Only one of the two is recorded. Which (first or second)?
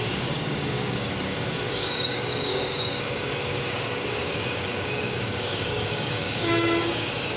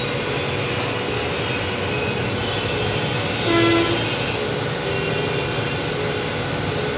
second